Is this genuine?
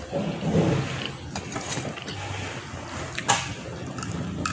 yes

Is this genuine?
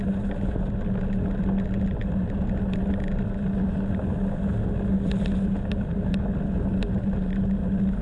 yes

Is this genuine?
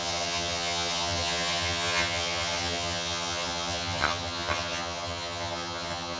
no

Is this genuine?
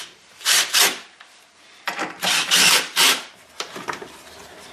no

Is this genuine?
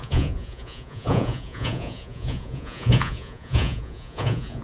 no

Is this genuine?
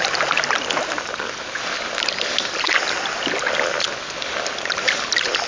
yes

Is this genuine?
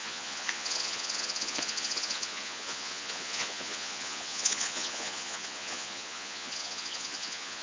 no